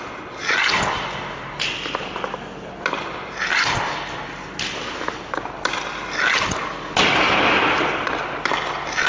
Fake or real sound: real